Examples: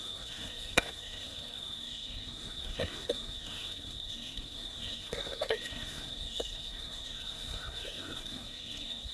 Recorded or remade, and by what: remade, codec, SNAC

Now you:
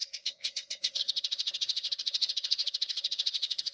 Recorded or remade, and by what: remade, codec, SNAC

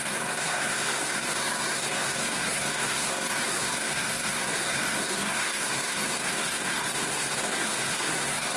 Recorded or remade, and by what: remade, codec, SNAC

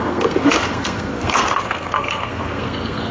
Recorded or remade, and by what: remade, codec, SNAC